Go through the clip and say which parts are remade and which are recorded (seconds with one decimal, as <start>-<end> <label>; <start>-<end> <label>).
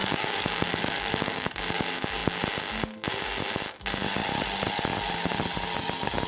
0.0-1.6 remade; 1.6-6.3 recorded